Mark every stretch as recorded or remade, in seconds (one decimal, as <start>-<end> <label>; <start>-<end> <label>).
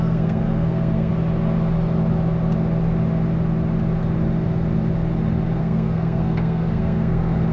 0.0-1.1 remade; 1.1-5.6 recorded; 5.6-7.5 remade